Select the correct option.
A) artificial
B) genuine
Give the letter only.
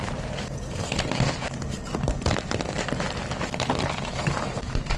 B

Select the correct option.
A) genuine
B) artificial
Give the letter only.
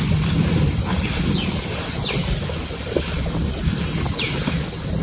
A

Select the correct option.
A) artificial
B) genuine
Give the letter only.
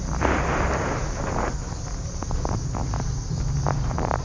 B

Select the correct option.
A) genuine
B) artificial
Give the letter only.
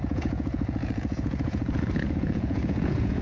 B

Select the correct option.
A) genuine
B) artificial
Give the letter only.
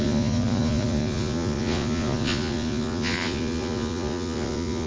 B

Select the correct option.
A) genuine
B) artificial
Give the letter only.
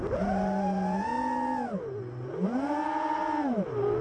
A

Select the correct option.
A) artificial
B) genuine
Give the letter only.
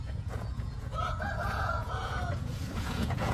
A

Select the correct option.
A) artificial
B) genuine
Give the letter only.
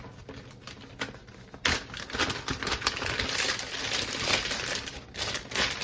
B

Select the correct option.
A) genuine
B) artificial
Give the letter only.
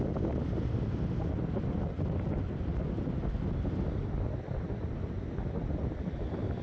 A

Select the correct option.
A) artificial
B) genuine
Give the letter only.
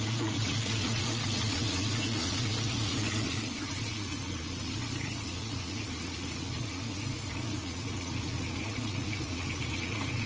A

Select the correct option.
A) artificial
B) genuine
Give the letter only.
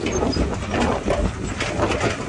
B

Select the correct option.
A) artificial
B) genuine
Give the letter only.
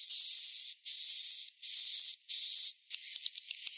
B